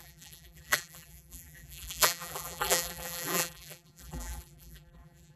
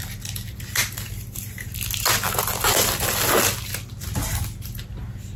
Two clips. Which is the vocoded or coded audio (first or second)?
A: first